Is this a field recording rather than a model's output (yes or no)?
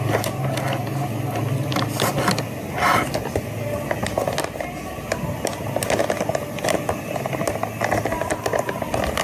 yes